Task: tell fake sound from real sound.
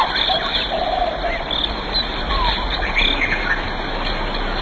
real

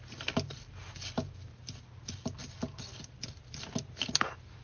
real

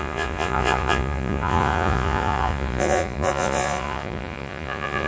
fake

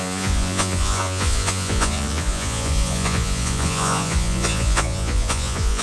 fake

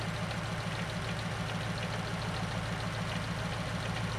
real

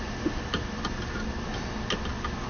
real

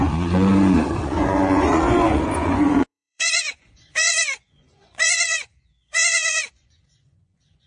fake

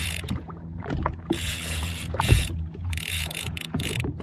fake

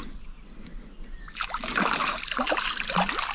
real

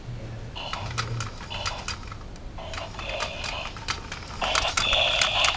real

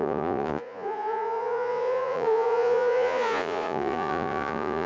fake